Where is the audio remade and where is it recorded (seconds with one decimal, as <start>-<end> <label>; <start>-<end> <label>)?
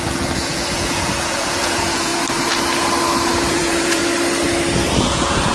0.0-2.1 remade; 2.1-3.5 recorded; 3.5-4.0 remade; 4.0-5.0 recorded; 5.0-5.5 remade